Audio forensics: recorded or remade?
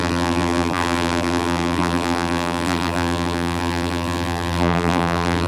remade